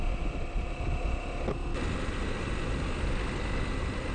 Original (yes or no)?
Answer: yes